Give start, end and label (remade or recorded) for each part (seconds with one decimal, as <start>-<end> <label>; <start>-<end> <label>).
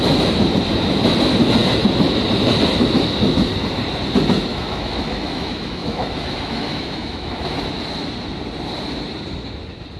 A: 0.0-4.5 recorded; 4.5-7.6 remade; 7.6-10.0 recorded